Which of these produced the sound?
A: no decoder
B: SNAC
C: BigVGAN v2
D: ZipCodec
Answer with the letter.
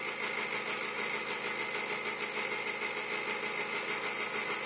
A